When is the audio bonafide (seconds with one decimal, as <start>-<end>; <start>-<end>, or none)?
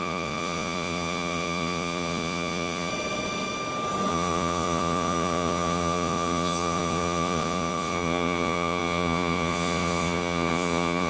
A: 2.9-4.1